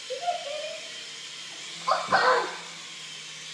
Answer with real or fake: real